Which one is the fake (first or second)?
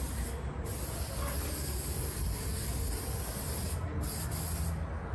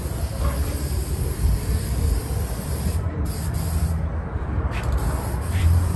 second